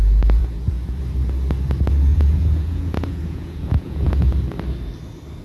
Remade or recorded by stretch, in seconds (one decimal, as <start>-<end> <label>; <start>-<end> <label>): 0.0-0.4 recorded; 0.4-1.0 remade; 1.0-2.1 recorded; 2.1-4.3 remade; 4.3-5.4 recorded